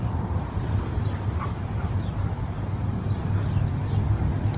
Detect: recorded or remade recorded